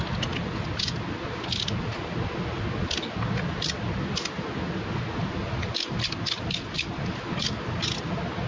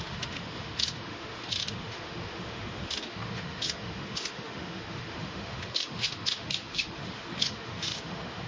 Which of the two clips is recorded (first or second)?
first